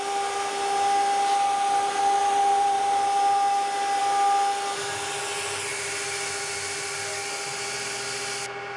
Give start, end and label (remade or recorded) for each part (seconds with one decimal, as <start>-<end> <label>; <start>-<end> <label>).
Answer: 0.0-2.2 recorded; 2.2-2.8 remade; 2.8-8.8 recorded